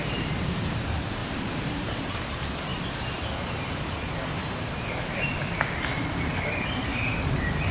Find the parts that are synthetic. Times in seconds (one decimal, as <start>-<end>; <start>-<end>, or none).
0.0-2.7; 6.4-6.9